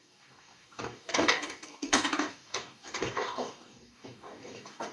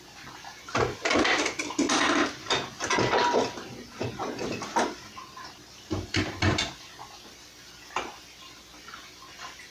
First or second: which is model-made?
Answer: first